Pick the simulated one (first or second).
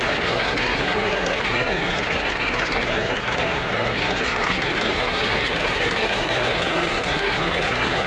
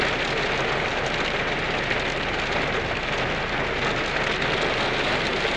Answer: first